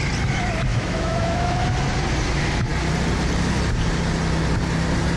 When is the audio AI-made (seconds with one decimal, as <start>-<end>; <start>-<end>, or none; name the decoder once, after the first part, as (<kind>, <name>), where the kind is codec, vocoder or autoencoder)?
0.7-1.6 (autoencoder, DAC-VAE)

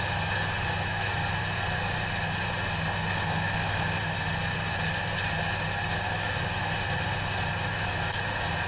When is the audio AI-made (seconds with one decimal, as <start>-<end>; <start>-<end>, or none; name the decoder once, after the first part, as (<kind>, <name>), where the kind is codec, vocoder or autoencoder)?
3.1-4.0 (autoencoder, DAC-VAE)

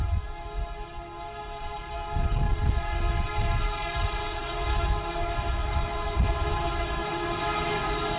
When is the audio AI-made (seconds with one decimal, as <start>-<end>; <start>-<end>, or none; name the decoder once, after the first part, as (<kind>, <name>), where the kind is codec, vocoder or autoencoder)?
4.8-7.0 (autoencoder, DAC-VAE)

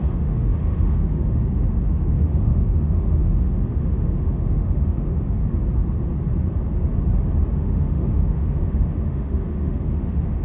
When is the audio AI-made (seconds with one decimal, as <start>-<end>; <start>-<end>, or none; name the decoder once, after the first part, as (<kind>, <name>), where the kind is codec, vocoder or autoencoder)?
0.0-5.4 (autoencoder, DAC-VAE); 7.5-10.4

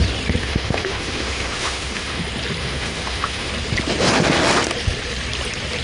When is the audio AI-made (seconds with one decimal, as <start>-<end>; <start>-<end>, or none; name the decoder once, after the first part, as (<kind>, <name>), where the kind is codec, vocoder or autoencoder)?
0.4-2.2 (autoencoder, DAC-VAE); 2.6-3.5

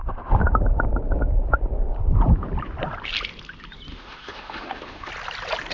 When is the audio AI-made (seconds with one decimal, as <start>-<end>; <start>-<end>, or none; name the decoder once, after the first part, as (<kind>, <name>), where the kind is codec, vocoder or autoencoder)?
3.9-5.1 (autoencoder, DAC-VAE)